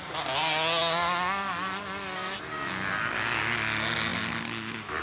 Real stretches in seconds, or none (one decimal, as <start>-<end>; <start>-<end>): 0.0-5.0